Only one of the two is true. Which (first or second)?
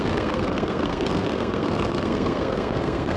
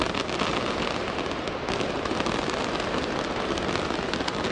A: second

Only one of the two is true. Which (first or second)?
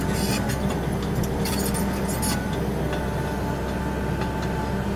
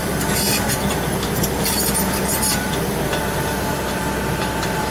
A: first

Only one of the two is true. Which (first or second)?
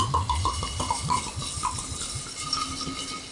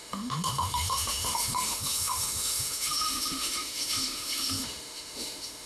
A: first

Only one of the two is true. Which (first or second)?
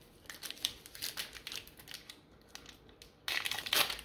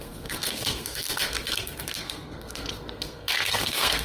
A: first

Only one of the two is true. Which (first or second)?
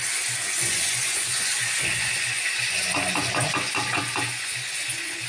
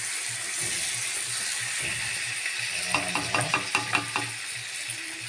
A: second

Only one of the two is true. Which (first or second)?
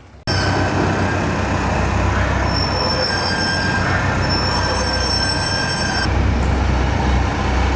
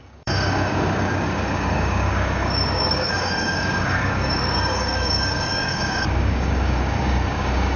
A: first